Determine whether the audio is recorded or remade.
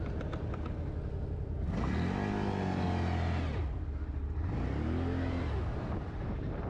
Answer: recorded